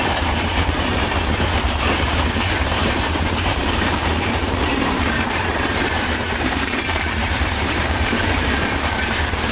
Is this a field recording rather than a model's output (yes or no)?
no